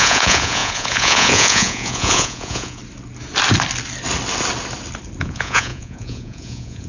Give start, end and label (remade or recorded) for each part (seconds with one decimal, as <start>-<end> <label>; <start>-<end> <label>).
0.0-2.8 remade; 2.8-5.2 recorded; 5.2-6.9 remade